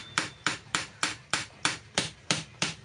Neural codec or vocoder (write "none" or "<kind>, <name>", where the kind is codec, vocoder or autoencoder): vocoder, BigVGAN v2